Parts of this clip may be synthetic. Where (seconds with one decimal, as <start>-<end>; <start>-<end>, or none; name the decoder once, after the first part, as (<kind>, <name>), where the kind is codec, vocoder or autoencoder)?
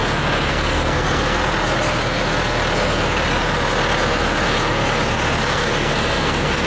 0.5-1.4 (codec, SNAC); 5.4-6.7